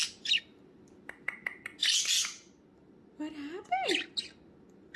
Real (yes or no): yes